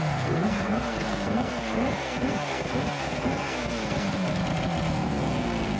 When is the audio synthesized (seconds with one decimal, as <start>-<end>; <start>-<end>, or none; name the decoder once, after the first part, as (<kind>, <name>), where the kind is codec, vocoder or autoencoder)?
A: 0.0-4.4 (codec, SNAC); 4.9-5.8